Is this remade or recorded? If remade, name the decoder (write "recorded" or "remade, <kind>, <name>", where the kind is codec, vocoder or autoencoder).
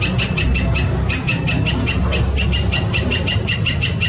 recorded